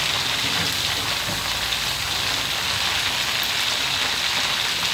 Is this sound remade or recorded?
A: recorded